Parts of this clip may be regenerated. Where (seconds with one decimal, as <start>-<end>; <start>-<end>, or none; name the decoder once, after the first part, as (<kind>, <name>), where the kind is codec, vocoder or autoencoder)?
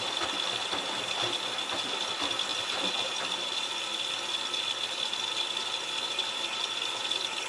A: none